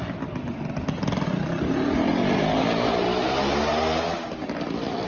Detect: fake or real real